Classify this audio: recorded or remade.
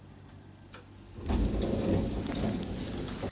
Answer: recorded